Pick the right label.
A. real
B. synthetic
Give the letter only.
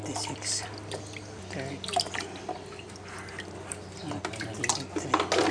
A